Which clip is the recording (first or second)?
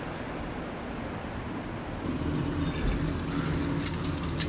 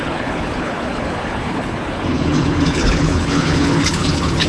first